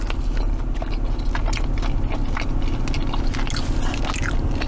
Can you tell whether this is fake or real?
real